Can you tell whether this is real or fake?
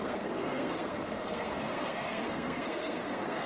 fake